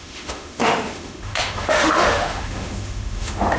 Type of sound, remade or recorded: remade